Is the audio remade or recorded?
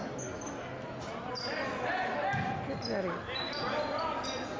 recorded